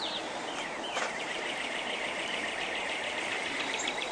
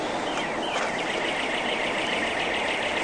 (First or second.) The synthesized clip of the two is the first